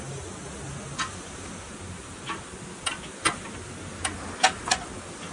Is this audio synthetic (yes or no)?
no